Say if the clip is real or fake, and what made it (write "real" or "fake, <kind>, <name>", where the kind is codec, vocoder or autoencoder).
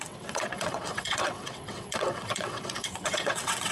fake, vocoder, WaveNeXt